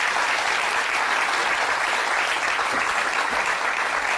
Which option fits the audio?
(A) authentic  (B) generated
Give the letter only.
A